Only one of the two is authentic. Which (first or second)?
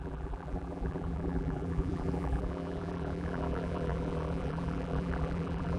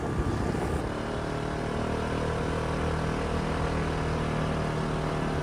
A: second